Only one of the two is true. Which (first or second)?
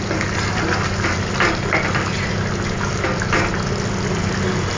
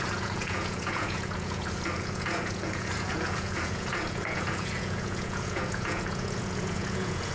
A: first